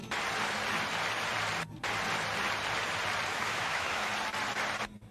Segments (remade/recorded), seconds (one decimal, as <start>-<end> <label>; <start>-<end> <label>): 0.0-3.3 recorded; 3.3-4.1 remade; 4.1-5.1 recorded